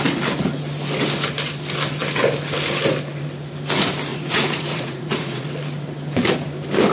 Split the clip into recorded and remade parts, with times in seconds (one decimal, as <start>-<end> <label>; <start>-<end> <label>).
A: 0.0-4.1 recorded; 4.1-5.5 remade; 5.5-6.9 recorded